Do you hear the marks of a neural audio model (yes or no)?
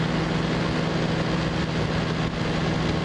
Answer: no